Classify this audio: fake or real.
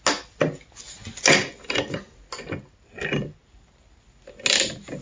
real